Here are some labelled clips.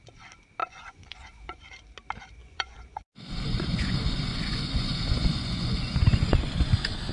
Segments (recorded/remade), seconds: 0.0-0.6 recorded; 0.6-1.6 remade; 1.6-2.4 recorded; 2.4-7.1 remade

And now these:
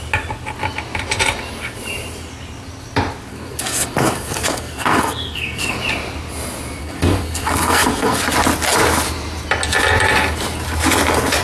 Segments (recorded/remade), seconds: 0.0-3.3 recorded; 3.3-5.8 remade; 5.8-6.8 recorded; 6.8-8.2 remade; 8.2-11.4 recorded

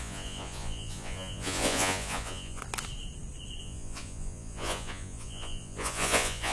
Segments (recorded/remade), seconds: 0.0-2.6 remade; 2.6-3.6 recorded; 3.6-6.5 remade

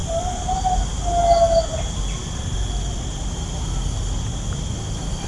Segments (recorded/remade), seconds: 0.0-5.3 recorded